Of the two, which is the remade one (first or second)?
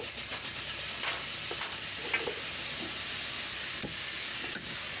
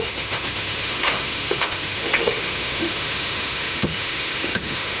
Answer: second